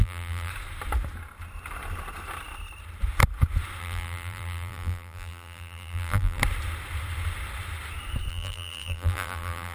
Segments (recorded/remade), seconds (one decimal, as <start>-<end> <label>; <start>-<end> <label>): 0.0-0.5 remade; 0.5-3.8 recorded; 3.8-6.4 remade; 6.4-8.3 recorded; 8.3-9.7 remade